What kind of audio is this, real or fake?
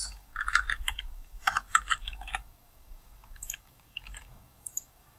fake